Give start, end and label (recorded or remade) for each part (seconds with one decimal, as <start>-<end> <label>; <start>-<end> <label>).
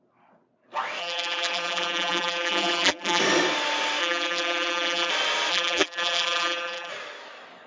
0.0-1.0 recorded; 1.0-3.2 remade; 3.2-4.0 recorded; 4.0-5.1 remade; 5.1-5.5 recorded; 5.5-6.9 remade; 6.9-7.7 recorded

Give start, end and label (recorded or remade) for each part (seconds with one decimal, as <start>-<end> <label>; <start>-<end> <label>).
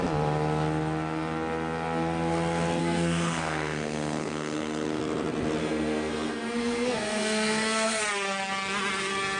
0.0-2.8 recorded; 2.8-5.0 remade; 5.0-5.6 recorded; 5.6-8.0 remade; 8.0-9.4 recorded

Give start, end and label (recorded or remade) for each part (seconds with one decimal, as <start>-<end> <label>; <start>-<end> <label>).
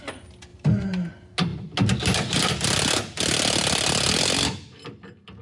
0.0-0.5 recorded; 0.5-1.1 remade; 1.1-5.4 recorded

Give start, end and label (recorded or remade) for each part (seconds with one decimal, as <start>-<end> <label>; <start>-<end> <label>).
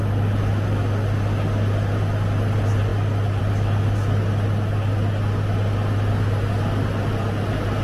0.0-7.8 recorded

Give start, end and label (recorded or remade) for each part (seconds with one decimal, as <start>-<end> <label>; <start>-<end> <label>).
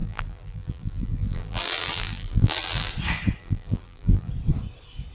0.0-2.9 remade; 2.9-3.4 recorded; 3.4-4.3 remade; 4.3-5.1 recorded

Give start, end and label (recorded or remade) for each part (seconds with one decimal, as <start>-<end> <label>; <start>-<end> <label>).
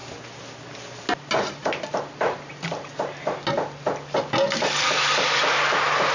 0.0-6.1 recorded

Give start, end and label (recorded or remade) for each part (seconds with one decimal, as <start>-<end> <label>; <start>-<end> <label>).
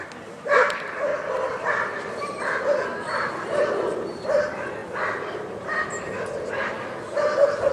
0.0-1.1 remade; 1.1-1.6 recorded; 1.6-4.8 remade; 4.8-7.7 recorded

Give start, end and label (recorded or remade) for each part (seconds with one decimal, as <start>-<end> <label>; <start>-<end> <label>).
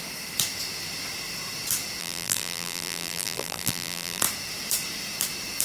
0.0-2.0 recorded; 2.0-4.2 remade; 4.2-5.6 recorded